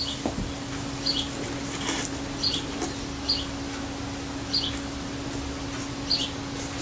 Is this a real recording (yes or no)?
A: yes